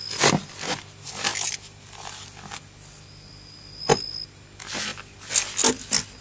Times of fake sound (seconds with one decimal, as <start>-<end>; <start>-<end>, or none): none